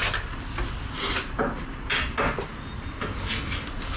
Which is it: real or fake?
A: real